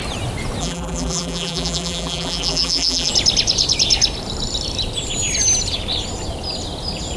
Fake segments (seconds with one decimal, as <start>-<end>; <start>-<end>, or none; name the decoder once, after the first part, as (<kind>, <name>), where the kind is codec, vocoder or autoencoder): 0.6-3.1 (vocoder, BigVGAN v2)